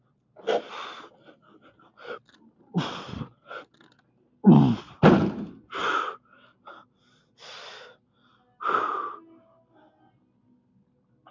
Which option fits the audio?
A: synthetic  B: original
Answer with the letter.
B